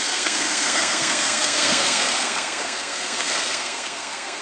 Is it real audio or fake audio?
fake